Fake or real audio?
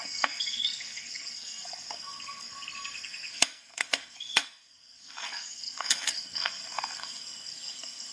fake